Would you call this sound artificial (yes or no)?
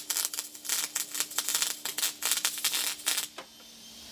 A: no